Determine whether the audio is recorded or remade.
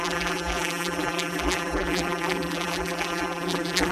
remade